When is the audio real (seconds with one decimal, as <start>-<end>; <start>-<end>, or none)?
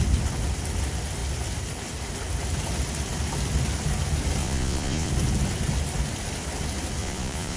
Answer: 0.0-4.4; 5.1-7.0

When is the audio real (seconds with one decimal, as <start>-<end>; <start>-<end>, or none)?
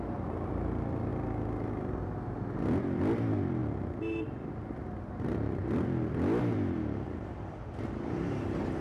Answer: 0.0-8.8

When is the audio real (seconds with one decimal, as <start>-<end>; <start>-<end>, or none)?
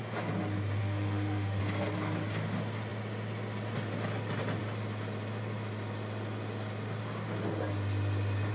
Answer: 0.0-0.8; 1.6-8.5